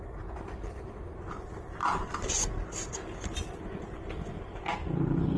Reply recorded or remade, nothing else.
recorded